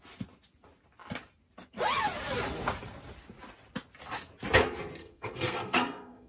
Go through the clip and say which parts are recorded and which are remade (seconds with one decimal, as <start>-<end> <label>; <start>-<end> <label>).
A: 0.0-5.0 recorded; 5.0-6.3 remade